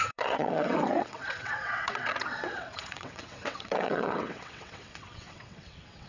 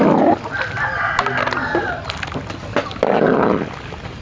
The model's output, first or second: first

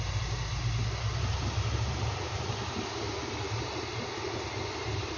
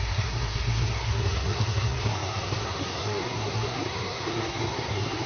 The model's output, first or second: second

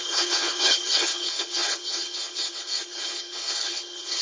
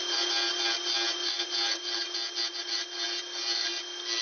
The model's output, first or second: first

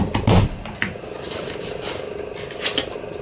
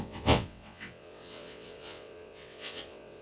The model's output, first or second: second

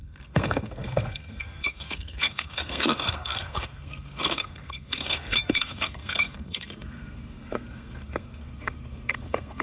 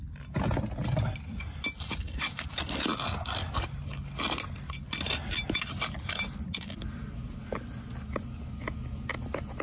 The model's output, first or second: first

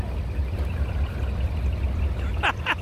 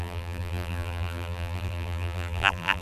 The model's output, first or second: second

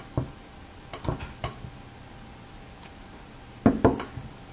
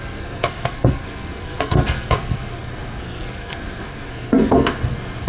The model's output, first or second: second